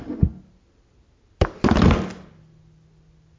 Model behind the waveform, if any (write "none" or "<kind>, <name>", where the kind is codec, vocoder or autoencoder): none